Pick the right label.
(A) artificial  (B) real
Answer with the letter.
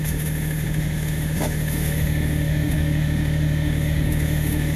A